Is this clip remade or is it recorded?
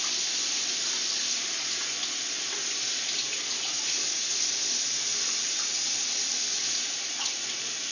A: recorded